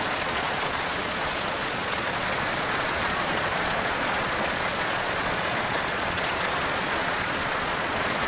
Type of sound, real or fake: fake